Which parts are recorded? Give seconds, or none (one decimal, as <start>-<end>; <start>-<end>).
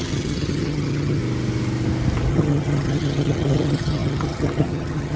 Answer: 1.2-2.3